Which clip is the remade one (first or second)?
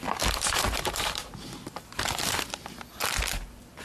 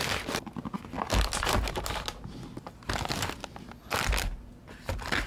first